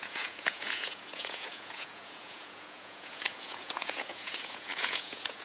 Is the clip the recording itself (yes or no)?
no